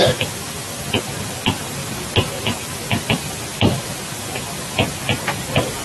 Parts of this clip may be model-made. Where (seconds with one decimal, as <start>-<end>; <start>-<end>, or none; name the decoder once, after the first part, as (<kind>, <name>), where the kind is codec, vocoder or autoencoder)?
none